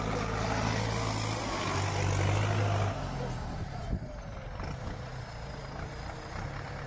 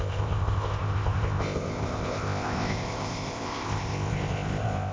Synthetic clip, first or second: second